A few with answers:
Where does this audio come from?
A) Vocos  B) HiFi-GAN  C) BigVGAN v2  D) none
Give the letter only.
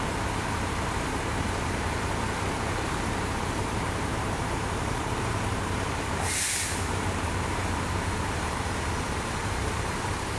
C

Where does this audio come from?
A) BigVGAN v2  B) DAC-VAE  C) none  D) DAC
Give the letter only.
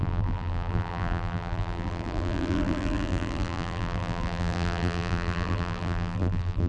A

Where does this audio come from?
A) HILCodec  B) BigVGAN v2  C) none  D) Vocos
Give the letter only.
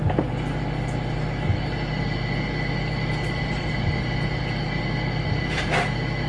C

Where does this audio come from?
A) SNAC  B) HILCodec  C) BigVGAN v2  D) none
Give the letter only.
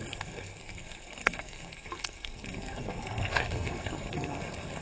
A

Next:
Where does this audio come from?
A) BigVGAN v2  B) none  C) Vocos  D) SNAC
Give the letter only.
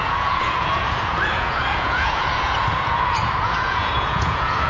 C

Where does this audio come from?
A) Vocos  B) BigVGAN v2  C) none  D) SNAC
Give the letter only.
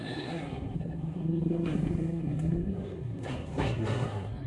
D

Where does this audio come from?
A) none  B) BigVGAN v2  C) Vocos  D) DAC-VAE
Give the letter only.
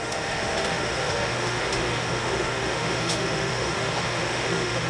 D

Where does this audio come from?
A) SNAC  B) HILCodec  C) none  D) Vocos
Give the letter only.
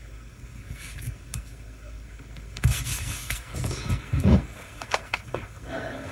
A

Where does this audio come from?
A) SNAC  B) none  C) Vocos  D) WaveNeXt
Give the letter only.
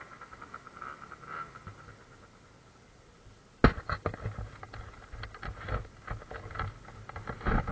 B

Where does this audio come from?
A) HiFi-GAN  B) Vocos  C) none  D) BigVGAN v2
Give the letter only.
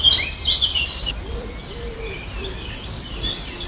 D